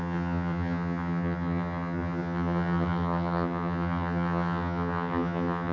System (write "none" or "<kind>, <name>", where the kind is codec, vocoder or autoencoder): vocoder, HiFi-GAN